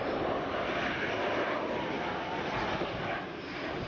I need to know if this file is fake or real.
real